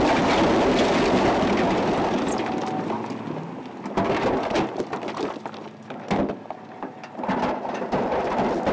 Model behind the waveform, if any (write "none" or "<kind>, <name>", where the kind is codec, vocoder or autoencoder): none